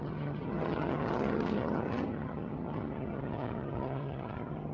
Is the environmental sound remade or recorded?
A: remade